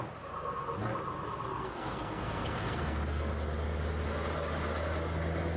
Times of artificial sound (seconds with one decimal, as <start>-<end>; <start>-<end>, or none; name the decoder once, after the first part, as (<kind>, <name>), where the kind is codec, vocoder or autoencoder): 1.5-3.3 (codec, SNAC)